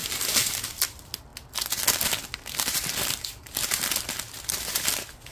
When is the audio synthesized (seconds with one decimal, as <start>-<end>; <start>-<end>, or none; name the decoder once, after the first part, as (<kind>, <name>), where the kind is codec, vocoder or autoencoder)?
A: none